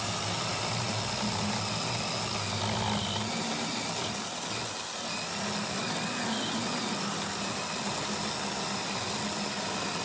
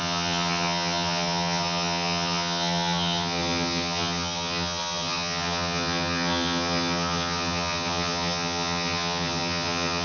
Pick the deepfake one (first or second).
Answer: second